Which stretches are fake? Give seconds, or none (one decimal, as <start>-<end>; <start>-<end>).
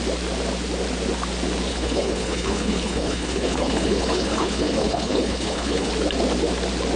1.7-5.9